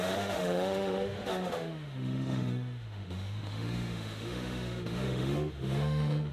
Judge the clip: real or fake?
fake